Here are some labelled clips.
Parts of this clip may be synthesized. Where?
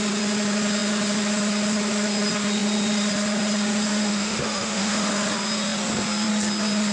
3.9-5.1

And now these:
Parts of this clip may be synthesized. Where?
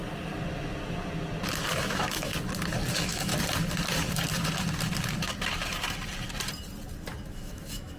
1.8-2.3; 2.9-3.3; 7.3-8.0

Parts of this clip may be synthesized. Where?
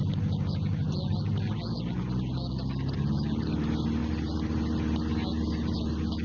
none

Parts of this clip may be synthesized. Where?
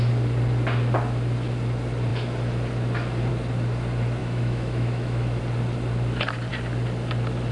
4.2-5.4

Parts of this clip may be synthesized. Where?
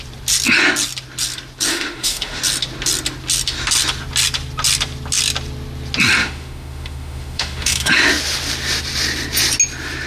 1.7-2.4; 6.2-7.9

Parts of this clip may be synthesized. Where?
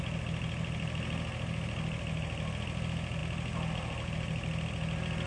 none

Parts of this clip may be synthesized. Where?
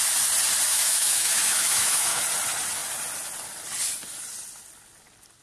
0.7-2.2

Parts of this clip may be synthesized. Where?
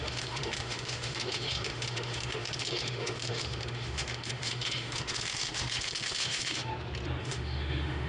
0.0-6.7; 7.2-8.1